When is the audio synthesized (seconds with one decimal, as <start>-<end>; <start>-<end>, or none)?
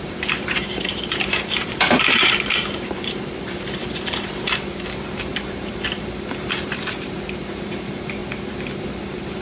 0.0-8.2; 8.8-9.4